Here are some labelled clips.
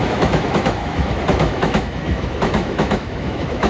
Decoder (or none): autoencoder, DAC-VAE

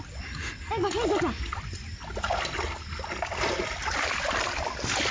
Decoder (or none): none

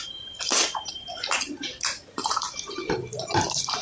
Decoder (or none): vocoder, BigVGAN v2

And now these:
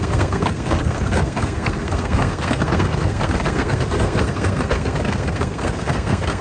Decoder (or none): codec, SNAC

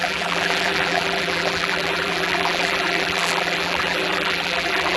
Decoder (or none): vocoder, BigVGAN v2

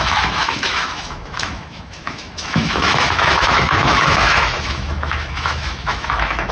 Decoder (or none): autoencoder, DAC-VAE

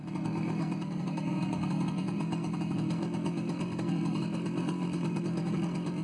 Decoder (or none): codec, SNAC